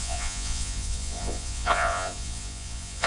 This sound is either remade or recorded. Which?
remade